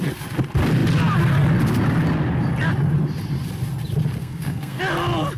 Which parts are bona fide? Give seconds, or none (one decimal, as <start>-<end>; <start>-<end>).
0.0-4.2; 4.8-5.4